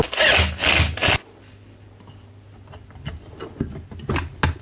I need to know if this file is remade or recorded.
recorded